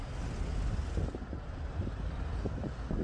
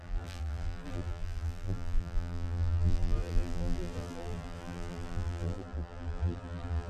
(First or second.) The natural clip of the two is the first